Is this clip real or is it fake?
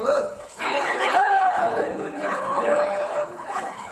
fake